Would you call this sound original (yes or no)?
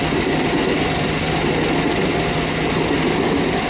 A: yes